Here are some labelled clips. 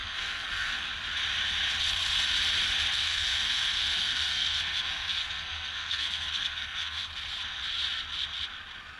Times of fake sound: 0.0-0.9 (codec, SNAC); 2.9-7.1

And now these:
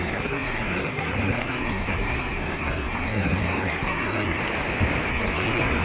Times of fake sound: 0.0-4.4 (codec, SNAC); 5.1-5.8

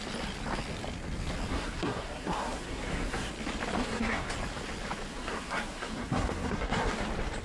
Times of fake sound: 1.5-3.3 (codec, SNAC); 3.8-4.3; 5.1-7.0

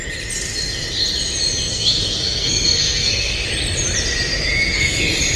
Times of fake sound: 1.7-3.5 (codec, SNAC); 4.5-5.0

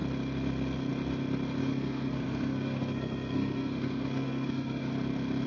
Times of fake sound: 1.6-4.9 (codec, SNAC)

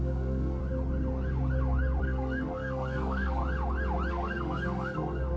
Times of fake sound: 0.0-0.6 (codec, SNAC); 2.0-3.4; 4.1-5.4

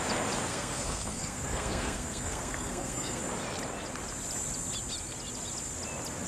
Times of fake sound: 0.5-3.2 (codec, SNAC)